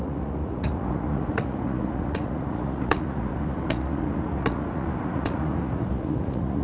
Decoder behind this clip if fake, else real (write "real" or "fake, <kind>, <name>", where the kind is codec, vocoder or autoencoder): fake, vocoder, Vocos